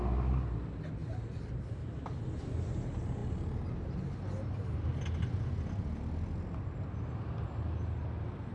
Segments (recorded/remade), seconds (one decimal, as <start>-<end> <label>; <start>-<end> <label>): 0.0-8.5 recorded